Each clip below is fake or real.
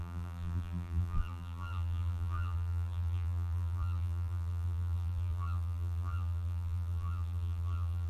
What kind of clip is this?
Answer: fake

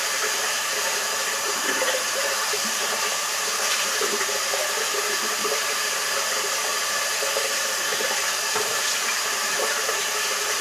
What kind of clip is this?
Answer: fake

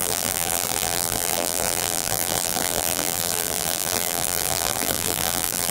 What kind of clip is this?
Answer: fake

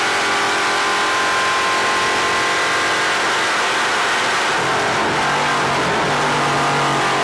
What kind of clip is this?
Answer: real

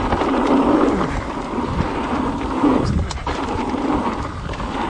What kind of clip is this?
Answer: fake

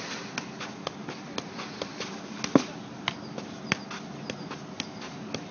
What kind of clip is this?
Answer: real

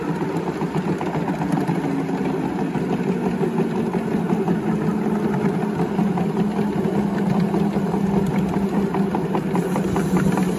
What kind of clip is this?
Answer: real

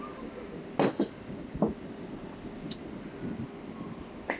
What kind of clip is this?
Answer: real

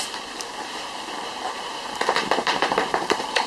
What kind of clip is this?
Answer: fake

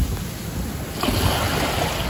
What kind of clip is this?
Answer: real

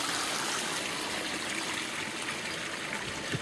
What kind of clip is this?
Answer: real